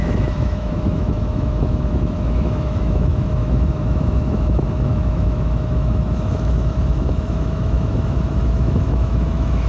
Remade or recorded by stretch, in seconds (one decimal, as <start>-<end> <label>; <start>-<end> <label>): 0.0-9.7 remade